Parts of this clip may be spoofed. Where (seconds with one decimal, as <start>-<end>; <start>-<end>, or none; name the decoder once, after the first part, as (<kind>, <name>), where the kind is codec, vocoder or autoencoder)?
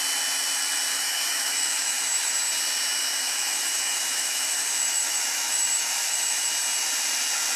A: 0.9-2.4 (autoencoder, DAC-VAE); 3.0-6.5